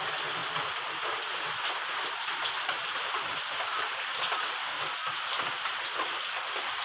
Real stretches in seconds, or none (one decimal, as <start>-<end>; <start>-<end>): 0.0-6.8